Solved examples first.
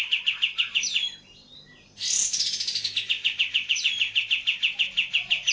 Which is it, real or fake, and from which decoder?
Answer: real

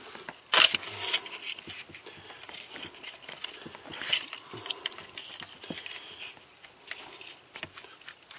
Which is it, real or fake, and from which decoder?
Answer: real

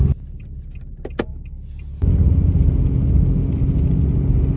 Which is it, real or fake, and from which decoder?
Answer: real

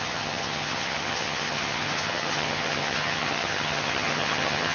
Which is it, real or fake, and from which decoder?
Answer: fake, vocoder, HiFi-GAN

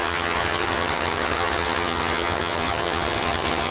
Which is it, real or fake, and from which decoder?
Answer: fake, vocoder, HiFi-GAN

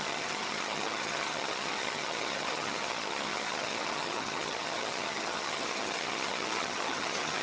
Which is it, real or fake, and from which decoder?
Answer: fake, vocoder, HiFi-GAN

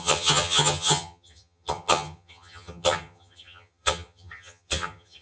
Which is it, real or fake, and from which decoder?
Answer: fake, vocoder, HiFi-GAN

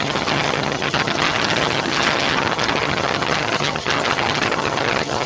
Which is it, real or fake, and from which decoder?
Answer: fake, vocoder, HiFi-GAN